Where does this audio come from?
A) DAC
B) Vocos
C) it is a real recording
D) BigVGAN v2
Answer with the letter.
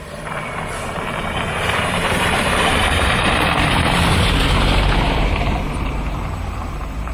D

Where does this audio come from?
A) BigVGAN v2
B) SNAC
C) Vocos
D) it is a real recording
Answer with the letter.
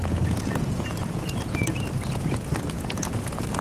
C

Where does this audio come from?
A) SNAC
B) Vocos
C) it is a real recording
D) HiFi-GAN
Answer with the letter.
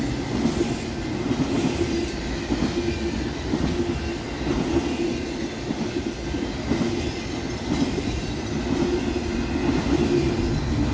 C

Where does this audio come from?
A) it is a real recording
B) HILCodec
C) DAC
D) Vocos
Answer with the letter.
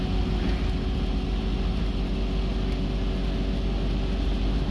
A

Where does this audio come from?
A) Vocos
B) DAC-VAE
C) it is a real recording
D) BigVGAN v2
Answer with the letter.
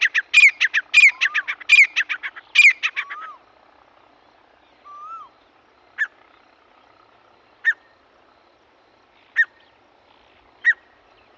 C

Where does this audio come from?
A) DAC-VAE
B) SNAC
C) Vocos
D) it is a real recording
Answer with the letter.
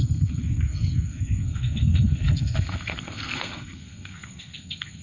B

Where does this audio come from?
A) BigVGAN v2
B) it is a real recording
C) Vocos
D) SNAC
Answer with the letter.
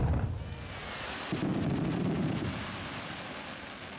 B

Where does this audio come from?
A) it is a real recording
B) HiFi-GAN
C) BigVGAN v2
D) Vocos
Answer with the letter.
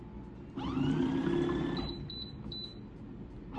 A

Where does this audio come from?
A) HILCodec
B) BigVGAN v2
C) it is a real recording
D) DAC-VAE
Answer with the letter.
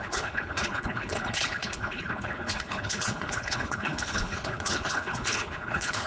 A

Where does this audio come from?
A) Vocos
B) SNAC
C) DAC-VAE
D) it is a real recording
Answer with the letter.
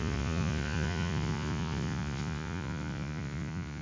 A